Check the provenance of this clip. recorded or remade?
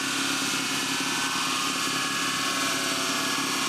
recorded